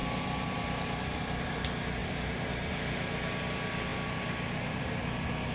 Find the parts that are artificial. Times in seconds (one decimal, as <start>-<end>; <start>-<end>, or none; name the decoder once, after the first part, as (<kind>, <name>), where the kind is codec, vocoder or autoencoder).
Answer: 0.0-1.4 (vocoder, BigVGAN v2); 2.0-2.5; 3.9-4.8